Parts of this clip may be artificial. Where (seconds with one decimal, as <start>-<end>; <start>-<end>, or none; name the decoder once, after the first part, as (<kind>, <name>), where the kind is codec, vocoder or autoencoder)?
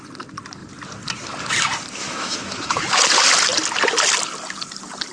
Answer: 2.0-3.0 (autoencoder, DAC-VAE)